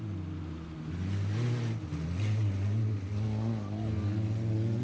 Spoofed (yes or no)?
no